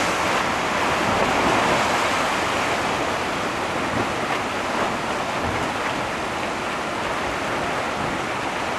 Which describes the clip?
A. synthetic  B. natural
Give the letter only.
B